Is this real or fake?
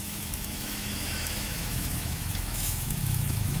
fake